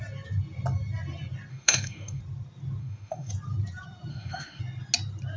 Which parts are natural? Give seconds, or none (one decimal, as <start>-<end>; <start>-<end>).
0.0-1.5; 2.2-2.8; 3.3-4.1; 4.6-5.4